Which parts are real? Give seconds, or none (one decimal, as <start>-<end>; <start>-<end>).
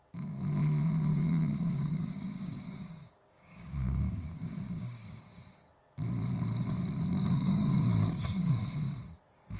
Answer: 0.0-1.1; 5.2-7.1; 8.6-9.6